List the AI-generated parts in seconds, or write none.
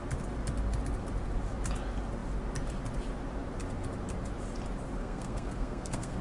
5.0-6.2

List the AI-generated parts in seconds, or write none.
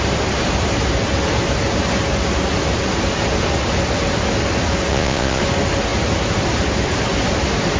4.9-5.4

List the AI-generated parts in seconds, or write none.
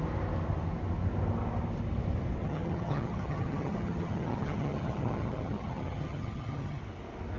2.4-6.8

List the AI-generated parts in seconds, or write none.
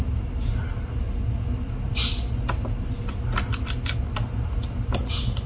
none